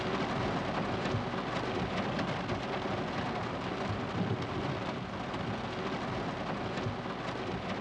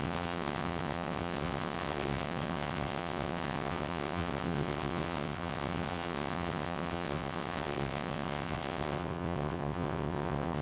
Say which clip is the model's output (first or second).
second